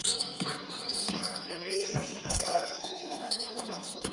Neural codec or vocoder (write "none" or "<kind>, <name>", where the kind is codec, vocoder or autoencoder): codec, SNAC